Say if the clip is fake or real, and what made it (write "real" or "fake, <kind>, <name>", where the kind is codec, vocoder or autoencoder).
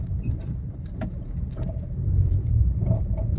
fake, vocoder, BigVGAN v2